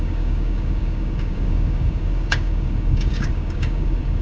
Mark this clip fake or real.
fake